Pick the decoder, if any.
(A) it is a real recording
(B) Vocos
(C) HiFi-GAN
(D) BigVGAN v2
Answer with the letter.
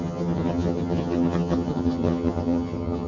C